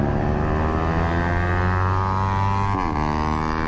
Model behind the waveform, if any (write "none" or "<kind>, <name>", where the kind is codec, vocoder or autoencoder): none